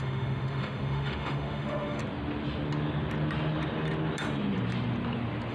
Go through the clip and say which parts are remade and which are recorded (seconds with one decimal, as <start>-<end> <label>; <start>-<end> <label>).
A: 0.0-2.0 remade; 2.0-5.5 recorded